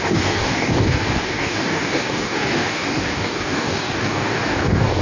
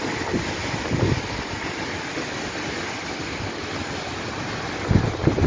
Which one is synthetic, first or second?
first